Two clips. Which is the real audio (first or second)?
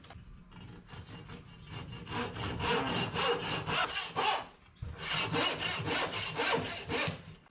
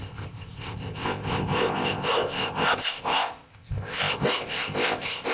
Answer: first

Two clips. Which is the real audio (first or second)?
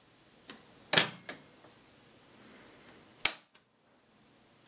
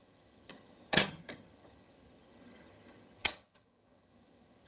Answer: first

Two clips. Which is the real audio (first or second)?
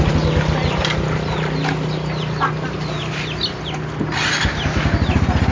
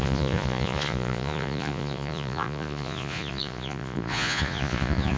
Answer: first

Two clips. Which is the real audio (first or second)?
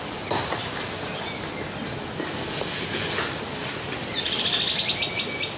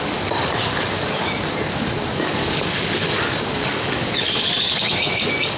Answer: first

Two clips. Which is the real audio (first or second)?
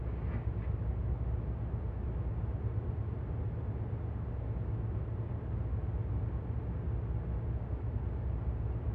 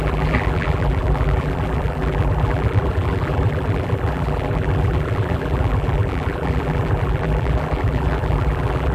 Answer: first